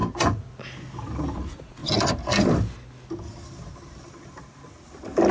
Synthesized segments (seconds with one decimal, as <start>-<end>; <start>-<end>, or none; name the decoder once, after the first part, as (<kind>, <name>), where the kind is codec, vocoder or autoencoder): 1.4-1.8 (vocoder, Vocos)